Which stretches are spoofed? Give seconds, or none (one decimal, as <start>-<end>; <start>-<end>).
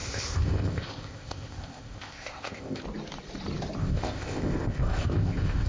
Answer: 0.0-2.8; 3.8-5.7